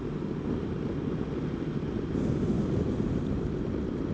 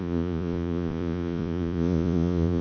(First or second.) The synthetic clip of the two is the second